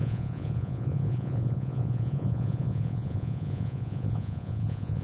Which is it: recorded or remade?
remade